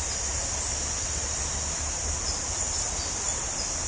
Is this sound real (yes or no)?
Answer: yes